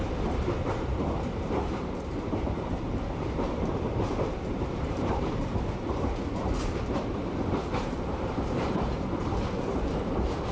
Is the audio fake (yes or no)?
yes